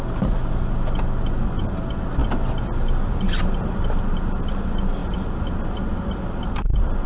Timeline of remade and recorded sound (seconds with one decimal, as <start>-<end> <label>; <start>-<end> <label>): 0.0-7.1 recorded